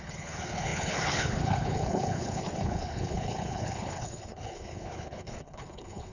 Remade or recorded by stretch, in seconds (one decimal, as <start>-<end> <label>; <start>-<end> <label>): 0.0-6.1 remade